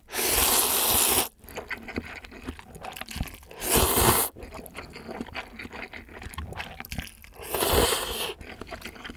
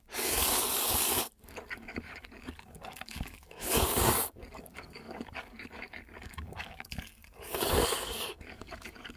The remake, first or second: second